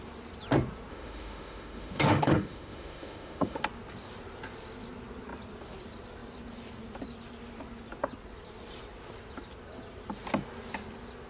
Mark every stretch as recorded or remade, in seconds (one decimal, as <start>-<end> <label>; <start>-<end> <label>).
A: 0.0-0.9 recorded; 0.9-3.6 remade; 3.6-11.3 recorded